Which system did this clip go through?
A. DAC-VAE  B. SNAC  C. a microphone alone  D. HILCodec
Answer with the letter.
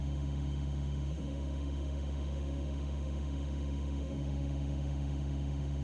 A